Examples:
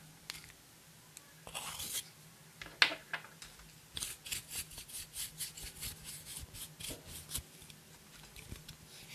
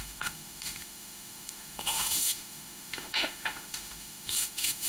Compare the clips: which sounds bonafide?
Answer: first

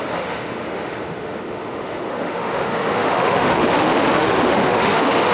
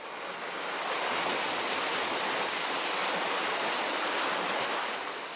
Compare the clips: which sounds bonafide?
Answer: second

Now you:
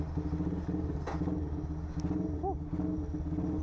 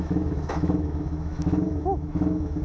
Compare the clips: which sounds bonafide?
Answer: first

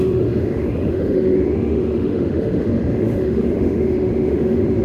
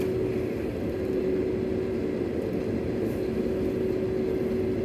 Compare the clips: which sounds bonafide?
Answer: second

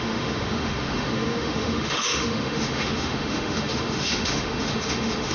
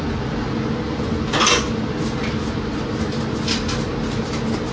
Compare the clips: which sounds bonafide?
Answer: second